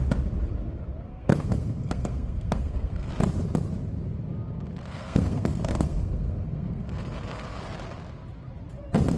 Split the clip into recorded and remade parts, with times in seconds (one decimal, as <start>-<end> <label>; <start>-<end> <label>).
0.0-1.1 recorded; 1.1-3.1 remade; 3.1-4.8 recorded; 4.8-7.6 remade; 7.6-9.2 recorded